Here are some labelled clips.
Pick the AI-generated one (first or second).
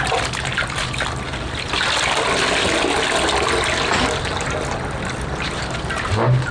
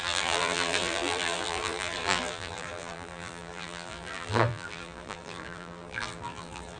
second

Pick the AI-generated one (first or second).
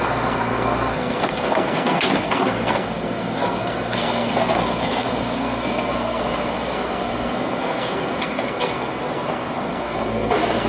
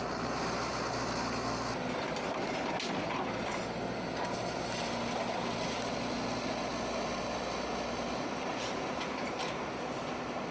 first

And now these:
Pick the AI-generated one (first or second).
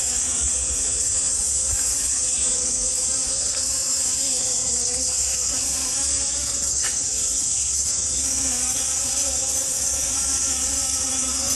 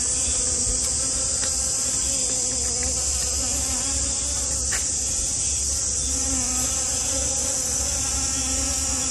first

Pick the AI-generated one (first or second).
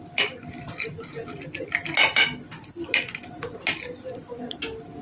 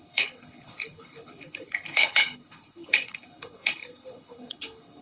second